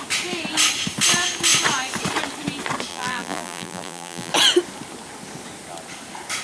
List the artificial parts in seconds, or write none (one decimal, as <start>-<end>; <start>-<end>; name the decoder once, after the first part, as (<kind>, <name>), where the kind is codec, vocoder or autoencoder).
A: 2.9-4.3 (vocoder, BigVGAN v2)

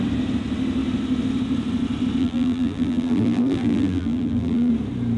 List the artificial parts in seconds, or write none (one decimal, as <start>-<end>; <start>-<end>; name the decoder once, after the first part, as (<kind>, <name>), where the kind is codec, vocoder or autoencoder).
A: 2.2-4.7 (vocoder, BigVGAN v2)

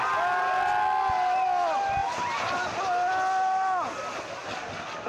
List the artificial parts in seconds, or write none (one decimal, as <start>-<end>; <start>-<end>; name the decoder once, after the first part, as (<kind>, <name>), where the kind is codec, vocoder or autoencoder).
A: none

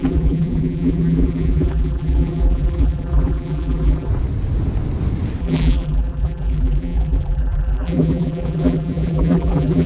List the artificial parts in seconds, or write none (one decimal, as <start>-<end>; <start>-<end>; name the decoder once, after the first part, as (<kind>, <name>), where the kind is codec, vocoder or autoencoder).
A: 0.0-4.1 (vocoder, BigVGAN v2); 5.4-9.9

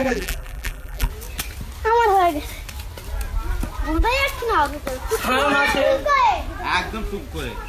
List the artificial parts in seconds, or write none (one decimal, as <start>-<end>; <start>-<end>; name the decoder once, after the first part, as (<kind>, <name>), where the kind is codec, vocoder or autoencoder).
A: 0.0-1.1 (vocoder, BigVGAN v2)

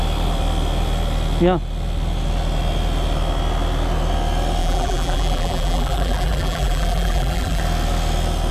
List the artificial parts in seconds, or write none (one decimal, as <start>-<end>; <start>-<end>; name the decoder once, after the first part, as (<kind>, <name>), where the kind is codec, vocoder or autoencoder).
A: 4.6-7.6 (vocoder, BigVGAN v2)